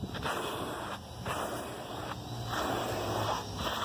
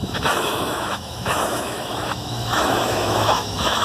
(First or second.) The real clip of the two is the first